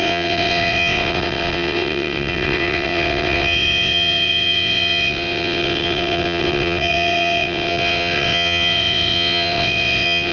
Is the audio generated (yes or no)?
yes